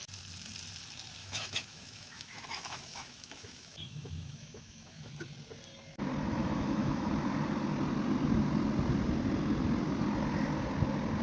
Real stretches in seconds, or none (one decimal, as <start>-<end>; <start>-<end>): 0.0-1.2; 5.1-6.3; 7.1-11.2